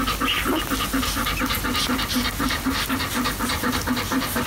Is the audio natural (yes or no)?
yes